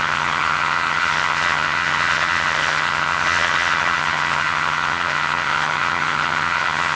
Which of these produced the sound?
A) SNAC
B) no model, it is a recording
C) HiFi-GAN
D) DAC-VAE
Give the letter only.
C